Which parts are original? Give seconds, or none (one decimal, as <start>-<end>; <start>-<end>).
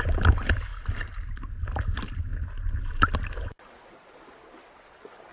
0.0-5.3